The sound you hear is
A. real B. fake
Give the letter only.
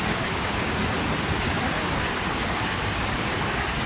B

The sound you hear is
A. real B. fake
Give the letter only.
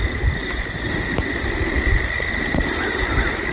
B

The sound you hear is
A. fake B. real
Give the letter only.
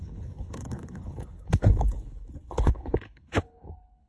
A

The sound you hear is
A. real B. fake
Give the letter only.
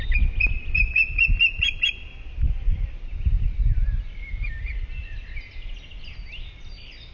A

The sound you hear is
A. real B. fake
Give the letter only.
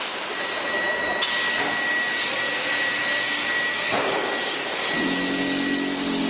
A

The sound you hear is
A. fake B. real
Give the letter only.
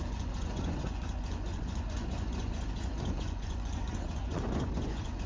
A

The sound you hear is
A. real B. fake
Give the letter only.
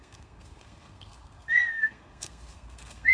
B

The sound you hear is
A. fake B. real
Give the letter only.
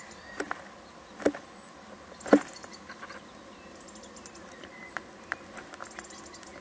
B